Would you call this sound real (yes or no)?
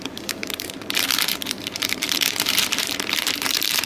no